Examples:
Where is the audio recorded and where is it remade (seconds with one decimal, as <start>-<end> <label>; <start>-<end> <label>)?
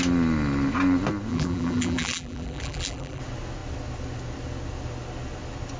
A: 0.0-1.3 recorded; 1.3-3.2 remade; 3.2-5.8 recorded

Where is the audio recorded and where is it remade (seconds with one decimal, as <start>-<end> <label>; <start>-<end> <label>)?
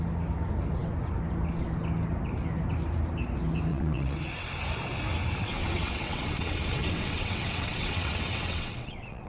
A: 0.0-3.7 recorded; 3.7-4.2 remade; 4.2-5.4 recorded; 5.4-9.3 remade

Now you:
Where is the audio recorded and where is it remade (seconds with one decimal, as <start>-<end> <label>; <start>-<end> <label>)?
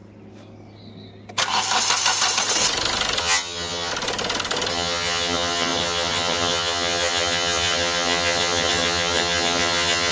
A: 0.0-3.2 recorded; 3.2-3.9 remade; 3.9-4.7 recorded; 4.7-10.1 remade